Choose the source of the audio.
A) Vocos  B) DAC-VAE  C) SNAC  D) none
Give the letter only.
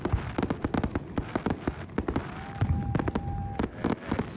D